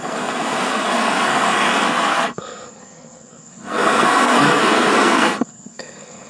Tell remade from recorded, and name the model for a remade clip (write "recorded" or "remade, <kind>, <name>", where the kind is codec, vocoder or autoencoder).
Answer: remade, codec, SNAC